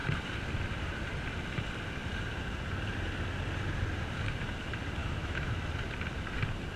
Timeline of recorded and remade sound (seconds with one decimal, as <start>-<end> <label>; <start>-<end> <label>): 0.0-5.0 recorded; 5.0-5.5 remade; 5.5-6.8 recorded